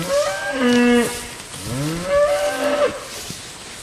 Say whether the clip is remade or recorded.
recorded